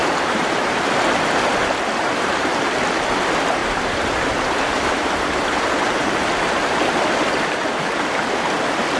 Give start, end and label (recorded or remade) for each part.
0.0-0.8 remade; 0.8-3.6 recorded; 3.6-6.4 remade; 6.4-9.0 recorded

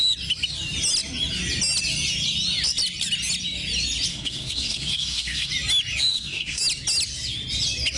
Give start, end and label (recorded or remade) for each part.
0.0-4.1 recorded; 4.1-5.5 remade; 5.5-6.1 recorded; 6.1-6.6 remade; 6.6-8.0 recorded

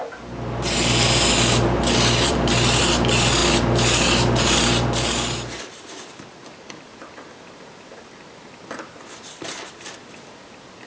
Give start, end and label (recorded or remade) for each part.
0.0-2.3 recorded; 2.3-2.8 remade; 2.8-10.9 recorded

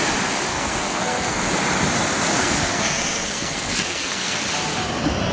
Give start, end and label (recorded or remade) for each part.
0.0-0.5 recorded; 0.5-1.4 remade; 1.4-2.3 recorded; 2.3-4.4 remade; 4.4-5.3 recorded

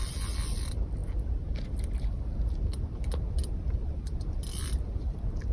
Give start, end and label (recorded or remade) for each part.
0.0-5.5 recorded

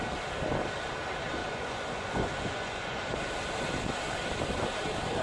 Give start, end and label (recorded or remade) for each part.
0.0-1.4 recorded; 1.4-3.3 remade; 3.3-5.2 recorded

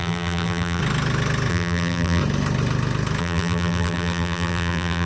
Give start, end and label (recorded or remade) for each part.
0.0-0.8 remade; 0.8-1.5 recorded; 1.5-2.2 remade; 2.2-3.2 recorded; 3.2-5.0 remade

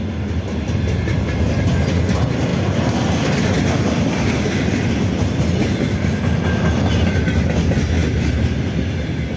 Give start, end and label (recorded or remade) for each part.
0.0-9.4 recorded